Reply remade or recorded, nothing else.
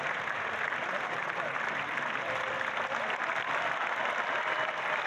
recorded